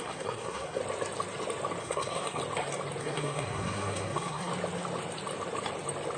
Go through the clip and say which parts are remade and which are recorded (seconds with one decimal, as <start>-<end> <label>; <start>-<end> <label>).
0.0-0.8 remade; 0.8-1.8 recorded; 1.8-2.4 remade; 2.4-3.0 recorded; 3.0-4.5 remade; 4.5-6.2 recorded